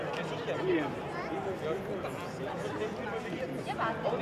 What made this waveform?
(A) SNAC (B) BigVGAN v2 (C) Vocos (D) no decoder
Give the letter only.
D